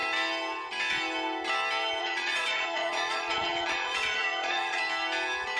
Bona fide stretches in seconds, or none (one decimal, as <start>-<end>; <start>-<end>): 0.0-2.0; 4.8-5.6